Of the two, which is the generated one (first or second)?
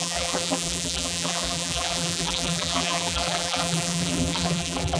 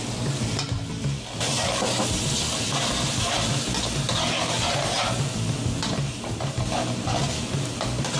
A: first